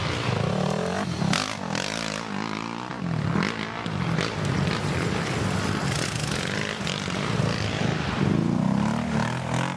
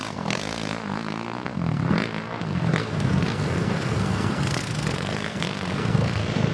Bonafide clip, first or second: first